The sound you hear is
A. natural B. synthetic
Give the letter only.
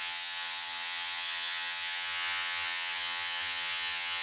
B